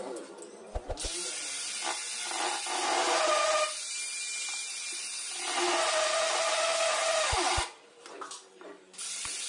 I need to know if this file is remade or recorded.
recorded